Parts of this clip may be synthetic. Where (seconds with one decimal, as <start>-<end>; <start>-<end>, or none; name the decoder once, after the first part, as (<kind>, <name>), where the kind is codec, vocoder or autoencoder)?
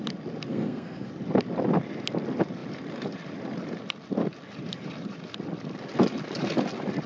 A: 0.5-1.1 (codec, SNAC)